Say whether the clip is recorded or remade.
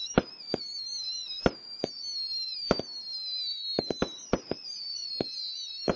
remade